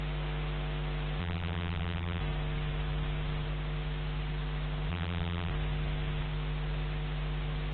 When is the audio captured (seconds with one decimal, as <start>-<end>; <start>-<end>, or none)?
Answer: 0.0-1.2; 2.2-4.9; 5.5-7.7